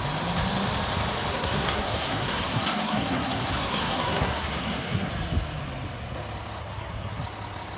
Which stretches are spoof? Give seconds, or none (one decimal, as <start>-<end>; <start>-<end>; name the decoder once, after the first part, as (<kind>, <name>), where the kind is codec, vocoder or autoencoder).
1.3-5.1 (codec, SNAC); 6.6-7.2